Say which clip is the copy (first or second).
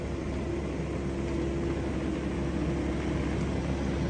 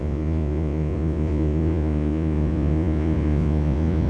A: second